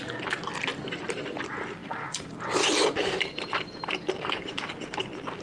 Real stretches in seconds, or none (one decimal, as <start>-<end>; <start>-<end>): 0.0-0.7; 1.4-1.8; 5.0-5.4